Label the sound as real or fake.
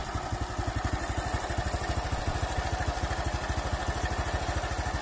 real